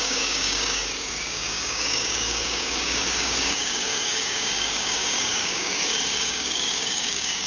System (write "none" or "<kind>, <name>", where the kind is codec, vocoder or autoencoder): codec, DAC